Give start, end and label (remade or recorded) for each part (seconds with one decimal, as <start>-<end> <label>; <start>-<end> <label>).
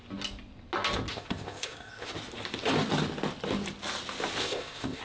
0.0-1.1 recorded; 1.1-2.1 remade; 2.1-4.4 recorded; 4.4-5.0 remade